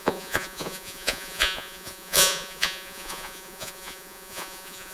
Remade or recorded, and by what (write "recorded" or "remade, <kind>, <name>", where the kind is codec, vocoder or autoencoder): remade, vocoder, Vocos